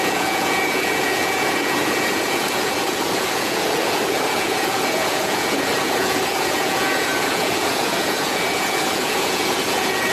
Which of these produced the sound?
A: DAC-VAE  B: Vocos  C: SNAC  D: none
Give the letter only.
B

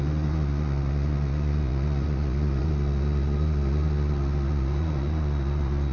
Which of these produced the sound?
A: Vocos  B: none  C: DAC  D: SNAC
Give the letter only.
A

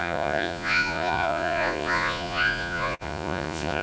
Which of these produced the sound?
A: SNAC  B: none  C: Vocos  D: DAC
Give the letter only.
C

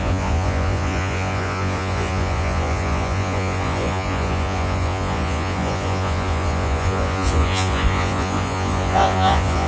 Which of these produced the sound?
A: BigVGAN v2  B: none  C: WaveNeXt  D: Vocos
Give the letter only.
D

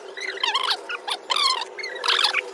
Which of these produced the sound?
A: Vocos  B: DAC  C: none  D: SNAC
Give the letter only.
C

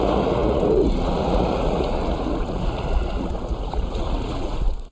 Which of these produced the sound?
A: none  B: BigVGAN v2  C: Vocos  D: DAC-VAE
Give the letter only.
C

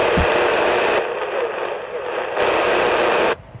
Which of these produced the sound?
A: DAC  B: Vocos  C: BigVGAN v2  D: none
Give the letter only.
D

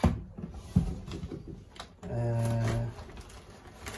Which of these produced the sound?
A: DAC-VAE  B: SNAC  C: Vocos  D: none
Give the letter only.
D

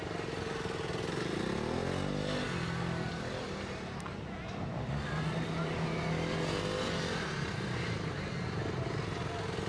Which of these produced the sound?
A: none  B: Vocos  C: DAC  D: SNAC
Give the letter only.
A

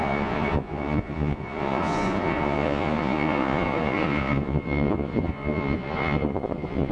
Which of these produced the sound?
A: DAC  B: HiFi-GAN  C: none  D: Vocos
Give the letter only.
D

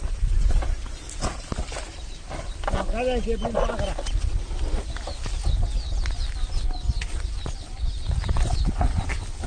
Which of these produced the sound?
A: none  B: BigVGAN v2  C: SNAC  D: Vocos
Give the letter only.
A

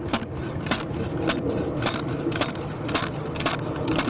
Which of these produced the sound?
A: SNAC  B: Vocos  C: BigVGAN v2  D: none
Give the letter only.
D